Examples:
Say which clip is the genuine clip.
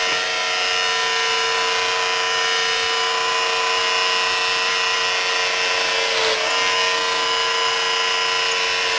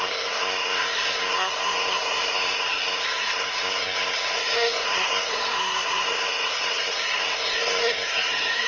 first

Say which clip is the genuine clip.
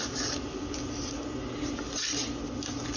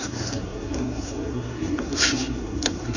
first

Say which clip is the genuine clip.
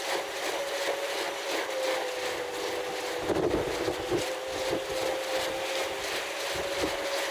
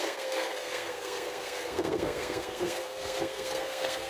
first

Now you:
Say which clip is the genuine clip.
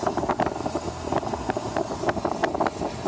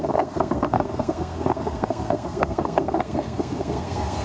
first